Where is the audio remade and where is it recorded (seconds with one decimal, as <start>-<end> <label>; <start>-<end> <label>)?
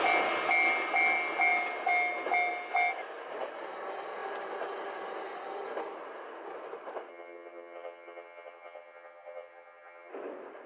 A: 0.0-7.1 recorded; 7.1-10.1 remade; 10.1-10.7 recorded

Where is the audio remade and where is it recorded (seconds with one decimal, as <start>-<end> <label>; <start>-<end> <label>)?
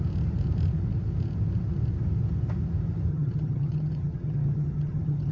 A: 0.0-3.1 recorded; 3.1-5.3 remade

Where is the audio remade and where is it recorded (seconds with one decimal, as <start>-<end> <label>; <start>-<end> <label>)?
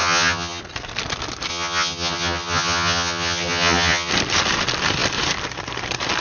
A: 0.0-0.6 remade; 0.6-1.5 recorded; 1.5-4.1 remade; 4.1-6.2 recorded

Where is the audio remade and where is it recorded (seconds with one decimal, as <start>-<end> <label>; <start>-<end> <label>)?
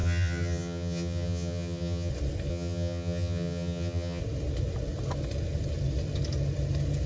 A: 0.0-2.1 remade; 2.1-2.5 recorded; 2.5-4.2 remade; 4.2-7.1 recorded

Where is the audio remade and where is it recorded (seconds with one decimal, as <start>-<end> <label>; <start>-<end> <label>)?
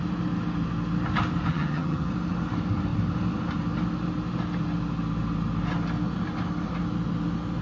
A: 0.0-1.5 recorded; 1.5-2.1 remade; 2.1-7.6 recorded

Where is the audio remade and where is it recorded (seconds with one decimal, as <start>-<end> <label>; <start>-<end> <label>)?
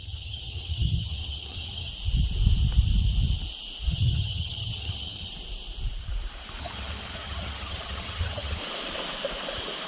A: 0.0-1.9 remade; 1.9-3.9 recorded; 3.9-5.3 remade; 5.3-6.6 recorded; 6.6-8.6 remade; 8.6-9.9 recorded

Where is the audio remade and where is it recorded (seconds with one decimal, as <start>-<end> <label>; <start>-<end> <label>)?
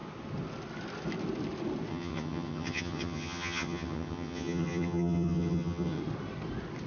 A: 0.0-1.9 recorded; 1.9-6.0 remade; 6.0-6.9 recorded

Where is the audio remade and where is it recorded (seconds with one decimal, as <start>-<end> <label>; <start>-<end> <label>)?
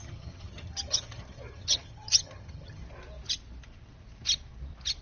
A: 0.0-2.8 remade; 2.8-5.0 recorded